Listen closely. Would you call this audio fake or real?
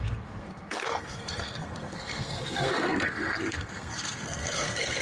fake